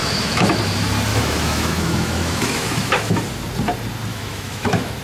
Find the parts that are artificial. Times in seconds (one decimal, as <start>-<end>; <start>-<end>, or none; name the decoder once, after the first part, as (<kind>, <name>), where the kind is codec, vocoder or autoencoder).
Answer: 0.0-0.6 (autoencoder, DAC-VAE); 1.1-3.2; 4.1-5.0